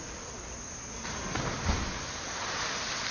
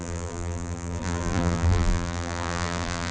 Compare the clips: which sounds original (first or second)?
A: first